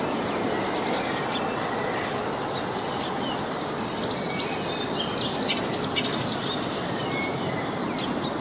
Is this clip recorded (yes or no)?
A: yes